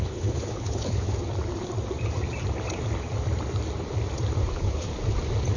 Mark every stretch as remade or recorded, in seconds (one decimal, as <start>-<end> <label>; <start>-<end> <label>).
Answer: 0.0-1.1 remade; 1.1-4.5 recorded; 4.5-4.9 remade; 4.9-5.6 recorded